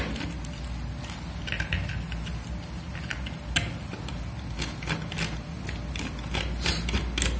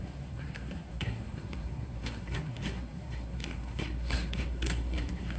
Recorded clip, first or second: first